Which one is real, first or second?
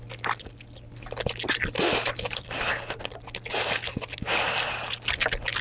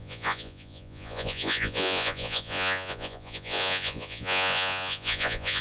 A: first